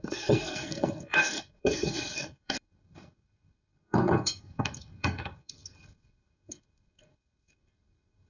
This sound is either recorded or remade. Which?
remade